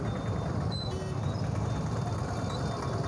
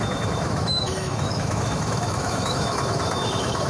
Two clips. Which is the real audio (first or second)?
first